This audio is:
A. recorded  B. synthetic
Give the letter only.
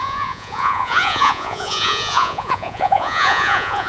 B